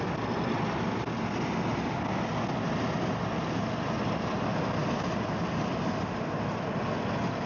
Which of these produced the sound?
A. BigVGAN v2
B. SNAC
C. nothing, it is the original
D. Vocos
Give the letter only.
C